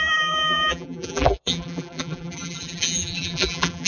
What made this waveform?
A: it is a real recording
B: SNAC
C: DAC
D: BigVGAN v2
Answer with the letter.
D